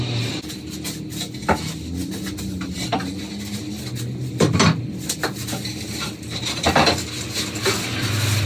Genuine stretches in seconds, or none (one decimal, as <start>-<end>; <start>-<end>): 0.0-8.5